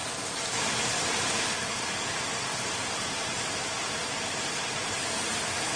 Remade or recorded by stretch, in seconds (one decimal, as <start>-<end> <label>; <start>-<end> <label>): 0.0-2.5 recorded; 2.5-5.3 remade; 5.3-5.8 recorded